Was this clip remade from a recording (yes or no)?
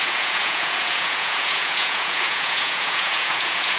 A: yes